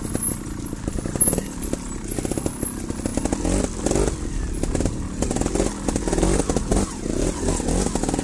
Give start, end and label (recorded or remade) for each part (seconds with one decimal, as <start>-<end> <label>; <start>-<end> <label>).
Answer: 0.0-6.7 recorded; 6.7-7.5 remade; 7.5-8.2 recorded